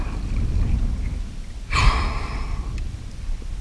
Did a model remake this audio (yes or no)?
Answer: no